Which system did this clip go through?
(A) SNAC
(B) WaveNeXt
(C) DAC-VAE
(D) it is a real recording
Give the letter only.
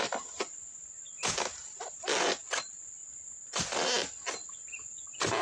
D